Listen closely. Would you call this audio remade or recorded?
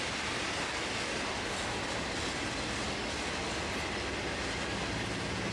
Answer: recorded